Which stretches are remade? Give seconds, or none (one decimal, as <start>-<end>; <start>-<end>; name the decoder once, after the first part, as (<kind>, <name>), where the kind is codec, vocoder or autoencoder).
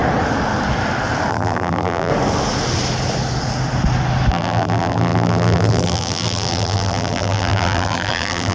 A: 1.3-2.1 (vocoder, BigVGAN v2); 4.3-8.5